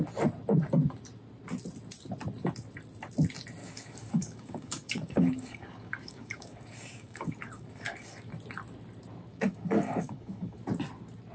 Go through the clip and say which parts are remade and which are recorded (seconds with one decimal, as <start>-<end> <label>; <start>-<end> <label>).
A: 0.0-3.6 recorded; 3.6-8.3 remade; 8.3-9.3 recorded; 9.3-10.6 remade; 10.6-11.3 recorded